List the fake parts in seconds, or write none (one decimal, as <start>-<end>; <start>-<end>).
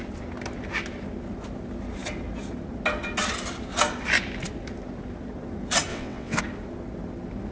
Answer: 5.9-6.4